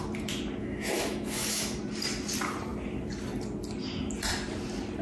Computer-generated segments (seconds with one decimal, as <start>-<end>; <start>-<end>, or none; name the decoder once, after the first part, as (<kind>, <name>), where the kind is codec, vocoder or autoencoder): 0.6-1.8 (autoencoder, DAC-VAE)